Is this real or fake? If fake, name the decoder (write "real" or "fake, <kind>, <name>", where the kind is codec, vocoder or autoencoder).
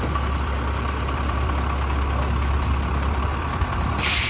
fake, vocoder, BigVGAN v2